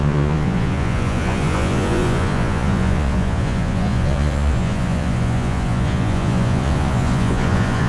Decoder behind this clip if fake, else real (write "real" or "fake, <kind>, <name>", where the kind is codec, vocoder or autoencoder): fake, vocoder, Vocos